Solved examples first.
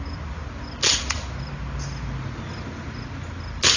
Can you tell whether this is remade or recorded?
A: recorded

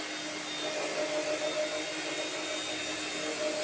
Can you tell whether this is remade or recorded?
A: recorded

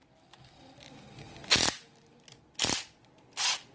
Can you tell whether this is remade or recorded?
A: recorded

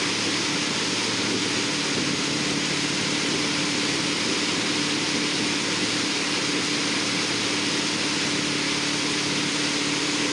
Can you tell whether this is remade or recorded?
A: recorded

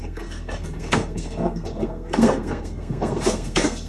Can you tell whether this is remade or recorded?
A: remade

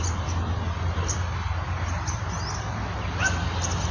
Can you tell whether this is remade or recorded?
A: recorded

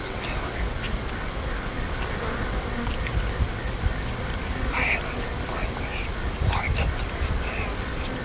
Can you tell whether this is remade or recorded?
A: recorded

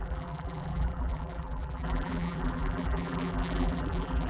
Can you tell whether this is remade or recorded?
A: remade